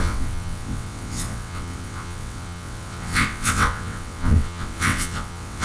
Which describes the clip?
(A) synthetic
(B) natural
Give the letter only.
A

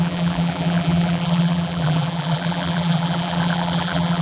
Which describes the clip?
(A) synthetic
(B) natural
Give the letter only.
A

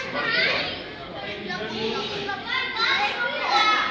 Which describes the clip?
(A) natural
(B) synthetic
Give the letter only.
A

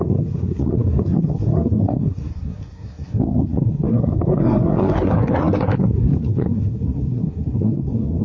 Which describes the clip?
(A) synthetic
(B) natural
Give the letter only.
A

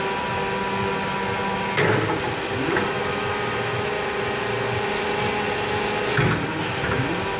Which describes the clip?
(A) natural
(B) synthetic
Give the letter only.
A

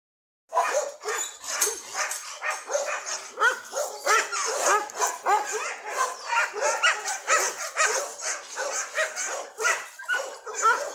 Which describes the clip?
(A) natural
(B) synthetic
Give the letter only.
A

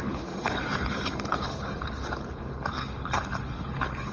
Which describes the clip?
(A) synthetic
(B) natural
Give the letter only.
A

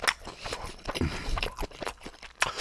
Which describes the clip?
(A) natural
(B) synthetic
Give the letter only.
A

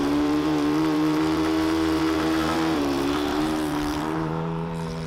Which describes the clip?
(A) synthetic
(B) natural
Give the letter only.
A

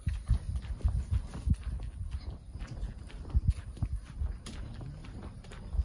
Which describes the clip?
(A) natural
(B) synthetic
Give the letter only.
A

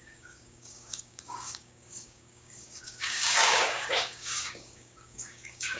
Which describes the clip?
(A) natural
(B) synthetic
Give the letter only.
B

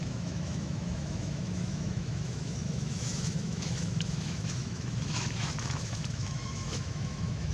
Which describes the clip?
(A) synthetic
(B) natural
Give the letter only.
A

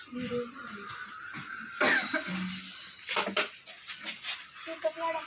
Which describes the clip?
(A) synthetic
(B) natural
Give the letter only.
B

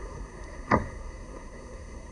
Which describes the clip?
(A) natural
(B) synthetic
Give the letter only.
B